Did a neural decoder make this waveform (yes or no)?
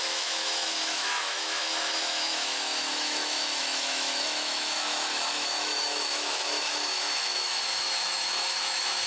yes